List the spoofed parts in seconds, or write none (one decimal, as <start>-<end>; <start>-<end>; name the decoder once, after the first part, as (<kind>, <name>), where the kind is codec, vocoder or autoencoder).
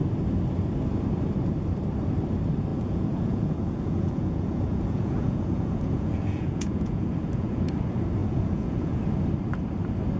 2.7-7.6 (vocoder, Vocos); 8.2-9.0